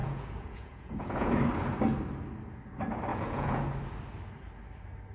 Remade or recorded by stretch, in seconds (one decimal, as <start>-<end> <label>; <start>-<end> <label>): 0.0-1.4 remade; 1.4-3.1 recorded; 3.1-3.6 remade; 3.6-5.1 recorded